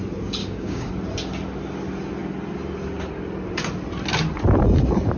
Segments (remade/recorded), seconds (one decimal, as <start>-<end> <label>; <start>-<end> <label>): 0.0-0.4 recorded; 0.4-0.9 remade; 0.9-5.2 recorded